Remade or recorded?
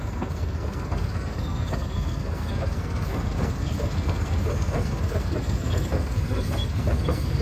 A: remade